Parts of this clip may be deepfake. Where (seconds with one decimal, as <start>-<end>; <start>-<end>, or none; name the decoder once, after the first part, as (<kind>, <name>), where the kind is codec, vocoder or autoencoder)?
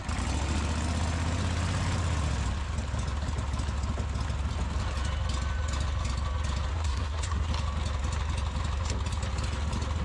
6.7-7.5 (codec, SNAC)